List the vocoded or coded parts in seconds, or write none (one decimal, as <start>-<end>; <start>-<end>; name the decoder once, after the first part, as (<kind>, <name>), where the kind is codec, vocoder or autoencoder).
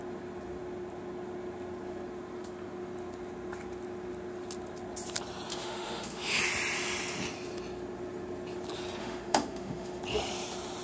5.5-6.4 (autoencoder, DAC-VAE); 9.0-10.0